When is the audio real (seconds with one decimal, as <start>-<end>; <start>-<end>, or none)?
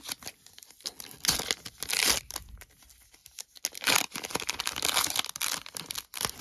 0.0-6.4